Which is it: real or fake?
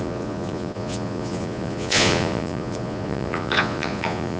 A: fake